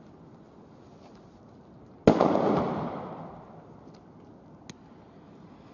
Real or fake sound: real